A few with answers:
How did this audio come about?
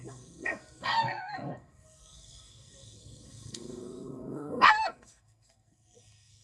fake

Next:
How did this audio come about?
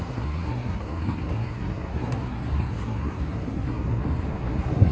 fake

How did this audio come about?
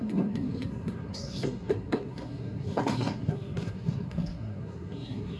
fake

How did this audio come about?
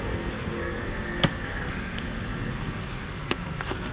fake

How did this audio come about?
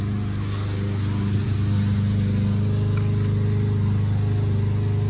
real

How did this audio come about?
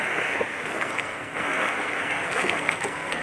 fake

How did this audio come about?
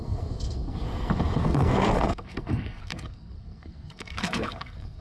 fake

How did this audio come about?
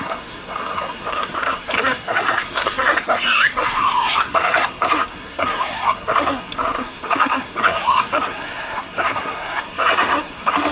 fake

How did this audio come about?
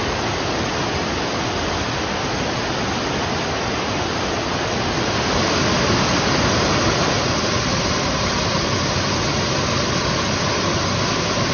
real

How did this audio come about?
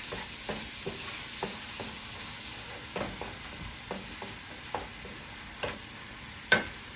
real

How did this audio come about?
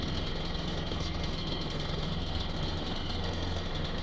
fake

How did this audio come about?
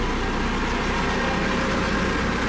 real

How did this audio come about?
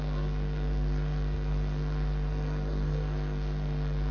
fake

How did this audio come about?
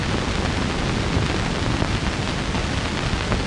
real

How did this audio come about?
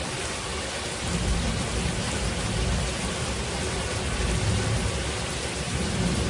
real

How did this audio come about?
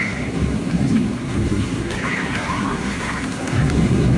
fake